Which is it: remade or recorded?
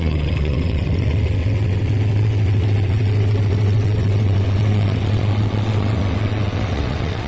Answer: remade